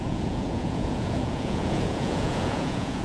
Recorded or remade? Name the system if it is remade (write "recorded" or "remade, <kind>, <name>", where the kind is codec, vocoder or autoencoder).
remade, vocoder, Vocos